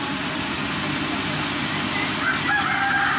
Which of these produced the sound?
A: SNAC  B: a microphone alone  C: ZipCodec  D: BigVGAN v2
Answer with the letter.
B